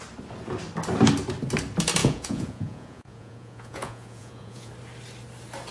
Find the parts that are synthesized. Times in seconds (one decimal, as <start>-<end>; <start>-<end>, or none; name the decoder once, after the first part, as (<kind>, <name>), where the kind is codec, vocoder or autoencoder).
2.0-4.7 (vocoder, Vocos)